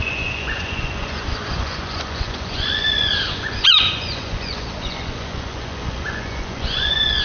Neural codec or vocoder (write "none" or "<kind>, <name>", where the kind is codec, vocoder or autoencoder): vocoder, Vocos